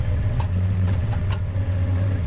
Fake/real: fake